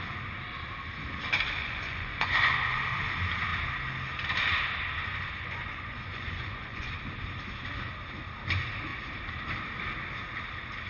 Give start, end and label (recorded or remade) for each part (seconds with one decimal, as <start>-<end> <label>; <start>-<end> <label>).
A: 0.0-1.6 recorded; 1.6-2.8 remade; 2.8-5.0 recorded; 5.0-6.9 remade; 6.9-10.9 recorded